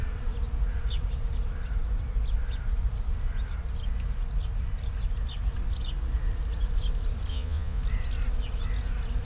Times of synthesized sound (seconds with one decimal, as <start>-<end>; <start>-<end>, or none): 7.3-7.8